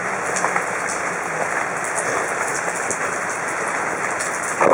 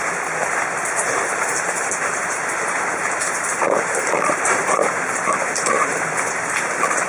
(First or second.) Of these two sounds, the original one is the first